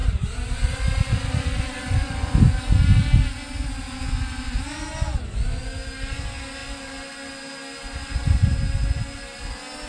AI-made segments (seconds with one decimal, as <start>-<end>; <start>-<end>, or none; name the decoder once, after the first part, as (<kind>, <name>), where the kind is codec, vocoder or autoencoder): 0.0-2.4 (vocoder, BigVGAN v2)